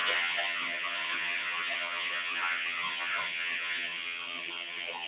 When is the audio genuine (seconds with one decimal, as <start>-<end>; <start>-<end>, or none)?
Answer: none